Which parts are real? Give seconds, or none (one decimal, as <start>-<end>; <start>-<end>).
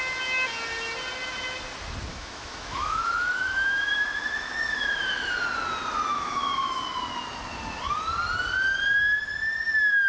0.0-2.1; 5.3-6.1; 6.8-10.1